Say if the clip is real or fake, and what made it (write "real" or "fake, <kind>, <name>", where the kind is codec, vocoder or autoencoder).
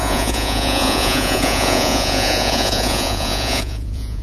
fake, vocoder, Vocos